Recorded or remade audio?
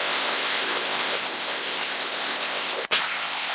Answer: remade